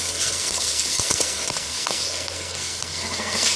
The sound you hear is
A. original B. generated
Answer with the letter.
B